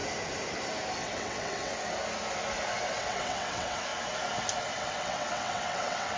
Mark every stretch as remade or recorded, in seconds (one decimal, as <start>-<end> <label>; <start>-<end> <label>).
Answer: 0.0-1.0 recorded; 1.0-1.7 remade; 1.7-2.8 recorded; 2.8-3.9 remade; 3.9-4.7 recorded; 4.7-6.2 remade